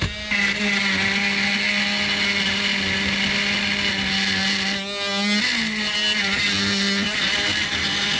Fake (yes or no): no